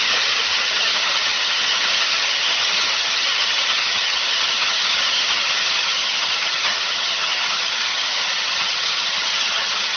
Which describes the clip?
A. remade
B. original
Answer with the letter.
A